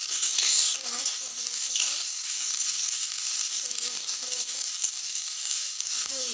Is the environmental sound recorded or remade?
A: remade